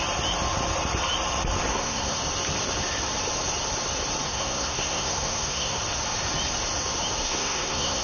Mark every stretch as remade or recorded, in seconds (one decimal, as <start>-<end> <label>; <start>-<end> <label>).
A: 0.0-1.7 recorded; 1.7-2.2 remade; 2.2-4.2 recorded; 4.2-5.8 remade; 5.8-7.2 recorded; 7.2-8.0 remade